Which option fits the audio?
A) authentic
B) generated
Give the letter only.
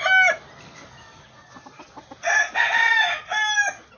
A